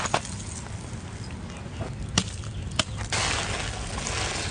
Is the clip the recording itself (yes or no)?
yes